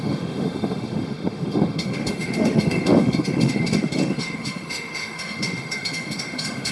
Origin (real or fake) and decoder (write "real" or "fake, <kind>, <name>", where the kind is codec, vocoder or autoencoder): fake, autoencoder, DAC-VAE